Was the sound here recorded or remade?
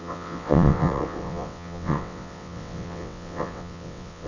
remade